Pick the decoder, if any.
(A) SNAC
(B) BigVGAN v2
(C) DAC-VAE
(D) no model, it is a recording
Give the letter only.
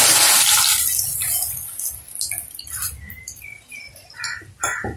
D